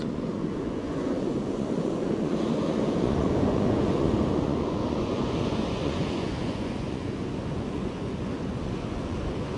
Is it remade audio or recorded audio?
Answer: remade